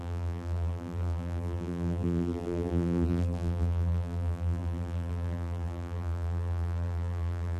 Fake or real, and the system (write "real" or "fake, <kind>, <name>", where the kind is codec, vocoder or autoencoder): fake, vocoder, BigVGAN v2